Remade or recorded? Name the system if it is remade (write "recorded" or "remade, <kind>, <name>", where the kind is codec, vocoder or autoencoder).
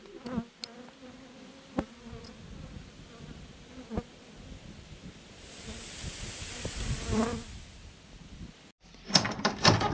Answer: recorded